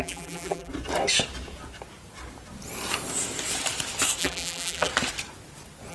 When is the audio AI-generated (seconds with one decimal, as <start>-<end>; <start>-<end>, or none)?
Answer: 0.0-0.7; 4.2-4.9